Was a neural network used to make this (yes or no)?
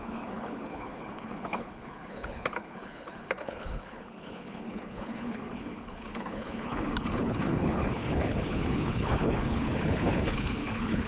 yes